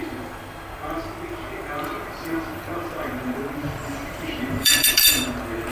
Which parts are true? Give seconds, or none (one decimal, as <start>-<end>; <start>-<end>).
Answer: 0.0-1.9; 5.3-5.7